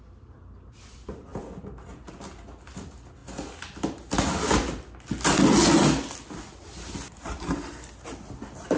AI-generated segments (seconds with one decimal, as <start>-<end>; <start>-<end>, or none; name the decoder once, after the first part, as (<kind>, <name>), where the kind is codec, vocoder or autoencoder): none